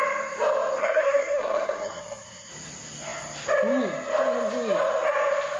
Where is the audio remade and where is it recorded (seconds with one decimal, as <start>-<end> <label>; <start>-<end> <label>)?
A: 0.0-0.8 recorded; 0.8-2.5 remade; 2.5-5.6 recorded